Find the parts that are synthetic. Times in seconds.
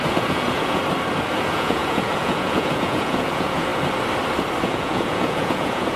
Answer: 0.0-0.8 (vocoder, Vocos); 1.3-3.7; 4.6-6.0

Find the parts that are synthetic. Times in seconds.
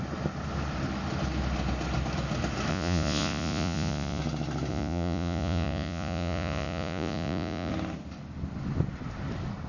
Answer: 2.7-4.2 (vocoder, Vocos); 4.7-7.7